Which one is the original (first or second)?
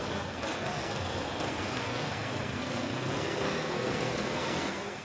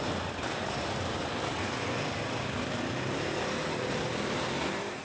second